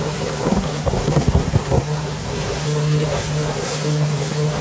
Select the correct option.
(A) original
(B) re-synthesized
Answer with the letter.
B